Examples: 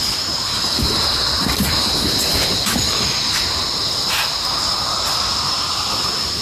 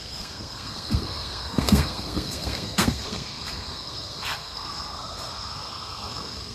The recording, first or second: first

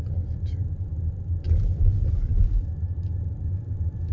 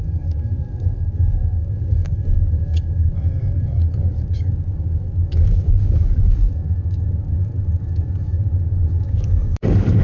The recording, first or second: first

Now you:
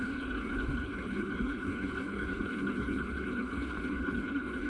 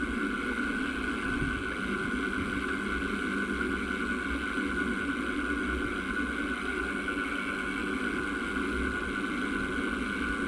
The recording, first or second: second